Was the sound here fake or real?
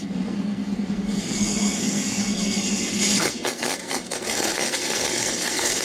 fake